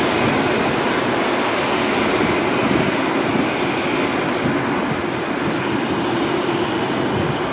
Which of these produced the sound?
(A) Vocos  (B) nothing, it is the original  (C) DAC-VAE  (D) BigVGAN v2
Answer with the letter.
B